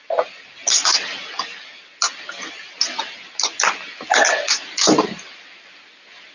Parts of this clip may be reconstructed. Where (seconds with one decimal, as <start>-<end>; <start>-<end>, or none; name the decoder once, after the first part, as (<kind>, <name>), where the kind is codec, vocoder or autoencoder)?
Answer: none